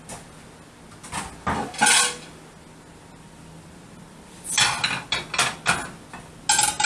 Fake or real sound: real